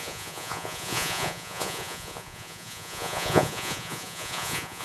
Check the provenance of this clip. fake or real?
fake